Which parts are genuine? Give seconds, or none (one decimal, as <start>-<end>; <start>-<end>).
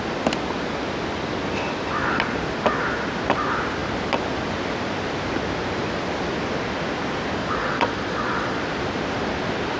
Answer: 0.0-7.4; 8.6-9.8